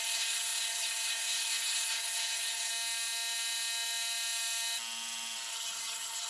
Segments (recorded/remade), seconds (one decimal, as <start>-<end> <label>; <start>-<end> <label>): 0.0-2.7 remade; 2.7-5.5 recorded; 5.5-6.3 remade